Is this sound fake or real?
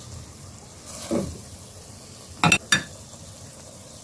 real